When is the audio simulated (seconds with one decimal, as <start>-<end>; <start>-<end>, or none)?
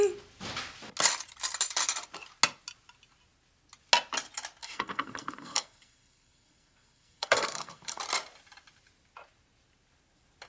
4.6-8.0